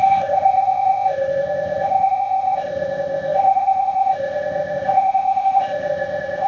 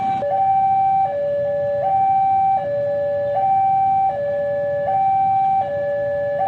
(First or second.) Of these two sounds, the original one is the second